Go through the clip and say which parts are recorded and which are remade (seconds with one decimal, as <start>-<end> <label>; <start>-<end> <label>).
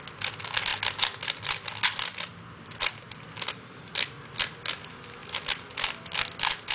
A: 0.0-0.7 recorded; 0.7-3.9 remade; 3.9-6.7 recorded